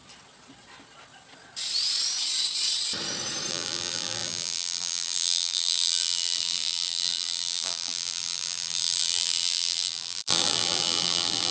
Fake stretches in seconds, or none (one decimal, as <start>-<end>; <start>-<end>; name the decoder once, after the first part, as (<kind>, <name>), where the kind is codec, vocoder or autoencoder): 3.5-11.5 (vocoder, BigVGAN v2)